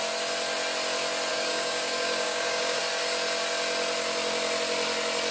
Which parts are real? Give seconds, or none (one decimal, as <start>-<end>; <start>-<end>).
0.0-1.3; 2.8-5.3